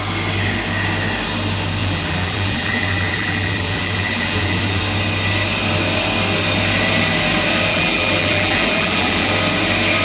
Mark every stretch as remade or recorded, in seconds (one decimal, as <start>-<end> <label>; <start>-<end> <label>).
0.0-1.8 recorded; 1.8-4.8 remade; 4.8-7.7 recorded; 7.7-9.3 remade; 9.3-10.0 recorded